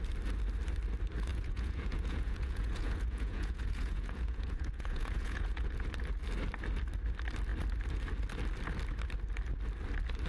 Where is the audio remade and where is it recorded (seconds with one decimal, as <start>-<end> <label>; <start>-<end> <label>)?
0.0-1.3 recorded; 1.3-5.9 remade; 5.9-10.3 recorded